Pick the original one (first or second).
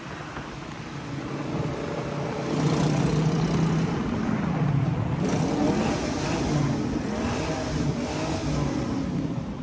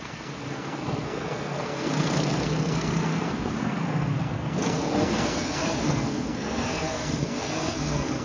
first